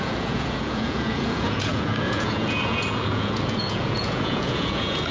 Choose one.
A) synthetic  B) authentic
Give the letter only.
A